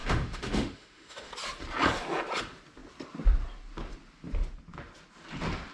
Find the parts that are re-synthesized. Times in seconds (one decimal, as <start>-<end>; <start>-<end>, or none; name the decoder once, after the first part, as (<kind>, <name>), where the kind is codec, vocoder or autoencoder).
0.0-1.3 (autoencoder, DAC-VAE)